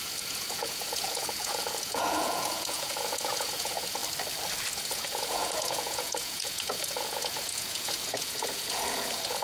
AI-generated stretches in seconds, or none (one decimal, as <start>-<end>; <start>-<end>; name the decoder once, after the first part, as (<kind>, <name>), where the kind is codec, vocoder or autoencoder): 0.0-4.0 (vocoder, Vocos); 4.7-9.4